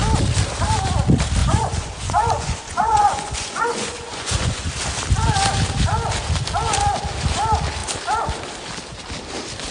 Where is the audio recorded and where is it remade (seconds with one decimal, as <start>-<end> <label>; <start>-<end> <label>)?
0.0-1.4 recorded; 1.4-4.7 remade; 4.7-9.7 recorded